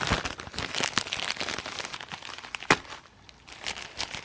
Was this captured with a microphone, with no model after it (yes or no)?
yes